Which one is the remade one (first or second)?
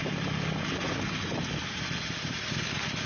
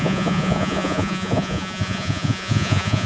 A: second